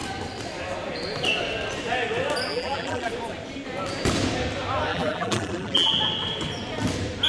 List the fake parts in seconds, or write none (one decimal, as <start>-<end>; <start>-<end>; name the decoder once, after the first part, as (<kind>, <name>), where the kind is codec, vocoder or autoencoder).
2.5-3.1 (vocoder, BigVGAN v2); 4.9-5.9